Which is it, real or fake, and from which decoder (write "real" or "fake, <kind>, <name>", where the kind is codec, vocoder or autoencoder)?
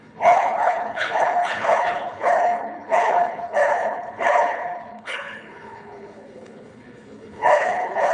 fake, codec, HILCodec